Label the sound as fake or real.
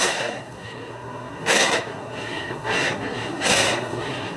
fake